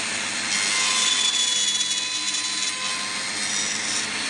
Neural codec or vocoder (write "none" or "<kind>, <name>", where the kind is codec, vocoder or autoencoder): none